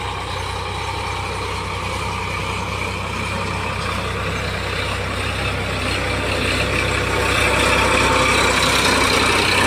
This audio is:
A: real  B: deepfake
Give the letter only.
A